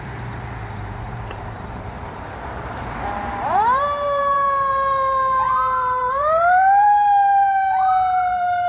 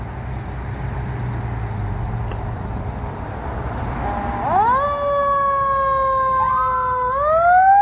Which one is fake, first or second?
first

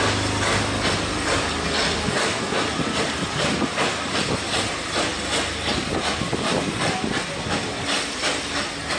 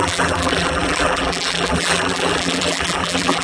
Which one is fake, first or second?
second